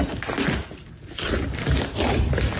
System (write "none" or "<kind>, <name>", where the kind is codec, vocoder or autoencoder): none